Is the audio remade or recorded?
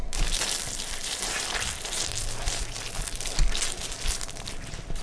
remade